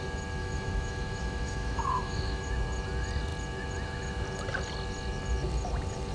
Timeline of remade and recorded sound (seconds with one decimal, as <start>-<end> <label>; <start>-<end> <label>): 0.0-0.4 recorded; 0.4-2.5 remade; 2.5-6.1 recorded